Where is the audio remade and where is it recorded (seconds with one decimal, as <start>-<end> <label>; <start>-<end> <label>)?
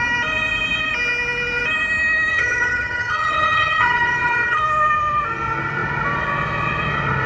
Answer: 0.0-2.3 recorded; 2.3-4.6 remade; 4.6-7.3 recorded